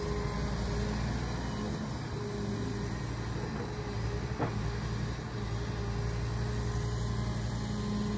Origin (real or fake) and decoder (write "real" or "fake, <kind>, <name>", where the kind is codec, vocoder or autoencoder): real